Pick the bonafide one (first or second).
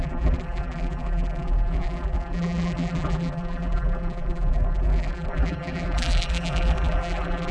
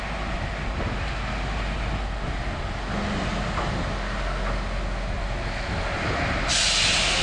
second